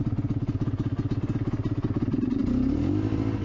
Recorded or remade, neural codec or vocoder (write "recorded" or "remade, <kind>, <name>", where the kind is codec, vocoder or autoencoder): recorded